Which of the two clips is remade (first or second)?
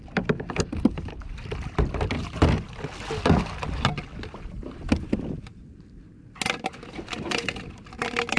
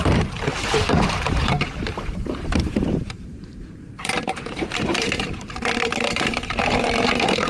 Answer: second